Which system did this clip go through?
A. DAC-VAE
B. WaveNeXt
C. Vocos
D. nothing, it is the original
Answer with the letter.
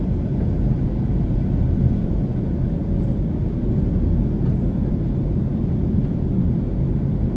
D